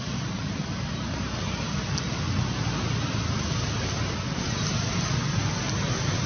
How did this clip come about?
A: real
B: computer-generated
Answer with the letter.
A